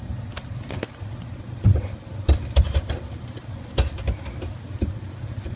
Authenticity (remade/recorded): recorded